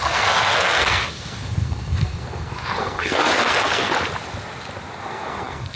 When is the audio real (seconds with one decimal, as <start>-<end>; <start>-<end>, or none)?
3.9-5.0